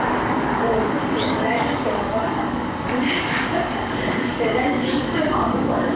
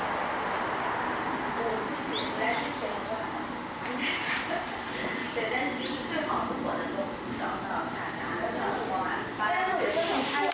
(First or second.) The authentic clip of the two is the second